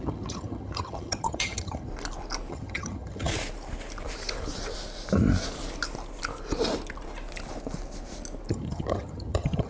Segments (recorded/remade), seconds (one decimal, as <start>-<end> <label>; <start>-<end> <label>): 0.0-1.9 remade; 1.9-2.5 recorded; 2.5-3.3 remade; 3.3-8.5 recorded; 8.5-9.7 remade